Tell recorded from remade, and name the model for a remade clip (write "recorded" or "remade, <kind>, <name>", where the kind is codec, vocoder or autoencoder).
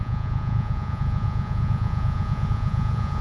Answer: remade, vocoder, Vocos